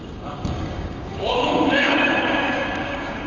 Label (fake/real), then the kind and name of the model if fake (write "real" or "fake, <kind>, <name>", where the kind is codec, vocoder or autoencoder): fake, codec, DAC